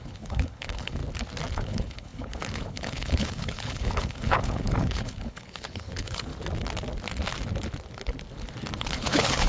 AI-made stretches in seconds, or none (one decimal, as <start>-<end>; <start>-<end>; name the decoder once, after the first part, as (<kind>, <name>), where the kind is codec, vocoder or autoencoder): 0.0-1.0 (codec, HILCodec); 1.5-6.3; 8.8-9.5